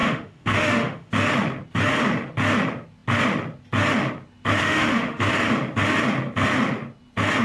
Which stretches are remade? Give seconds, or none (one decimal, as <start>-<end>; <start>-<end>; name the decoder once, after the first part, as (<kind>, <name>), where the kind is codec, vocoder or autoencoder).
0.0-1.1 (autoencoder, DAC-VAE); 4.6-5.3